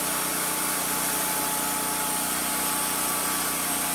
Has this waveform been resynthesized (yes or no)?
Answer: no